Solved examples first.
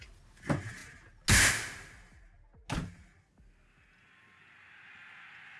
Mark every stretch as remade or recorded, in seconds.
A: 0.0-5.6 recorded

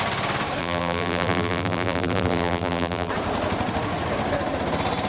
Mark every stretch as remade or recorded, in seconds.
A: 0.0-0.6 recorded; 0.6-3.1 remade; 3.1-5.1 recorded

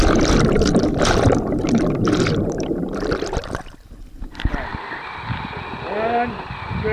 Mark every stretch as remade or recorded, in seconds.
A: 0.0-2.7 recorded; 2.7-3.4 remade; 3.4-6.9 recorded

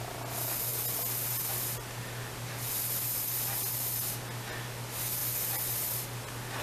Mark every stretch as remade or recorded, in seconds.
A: 0.0-6.6 recorded

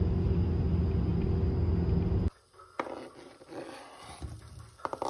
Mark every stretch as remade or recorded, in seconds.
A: 0.0-5.1 recorded

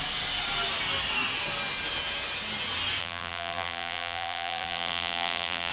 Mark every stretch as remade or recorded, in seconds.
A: 0.0-3.0 recorded; 3.0-5.7 remade